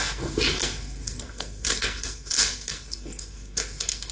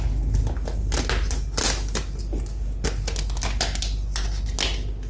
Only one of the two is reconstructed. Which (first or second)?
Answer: first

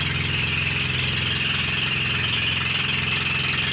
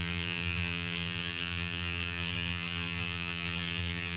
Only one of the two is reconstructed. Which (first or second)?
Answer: second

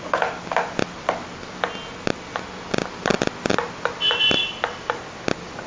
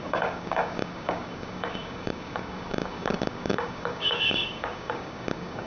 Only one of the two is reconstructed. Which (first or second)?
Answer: second